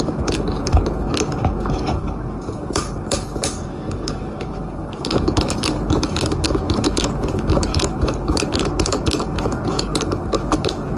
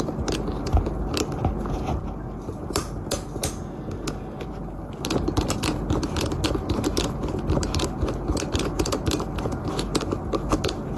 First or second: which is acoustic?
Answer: second